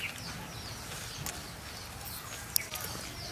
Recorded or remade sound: recorded